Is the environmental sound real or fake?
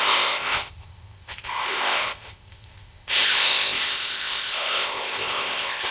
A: fake